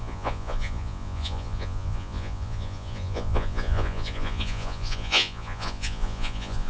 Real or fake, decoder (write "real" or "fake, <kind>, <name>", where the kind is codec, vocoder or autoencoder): fake, vocoder, Vocos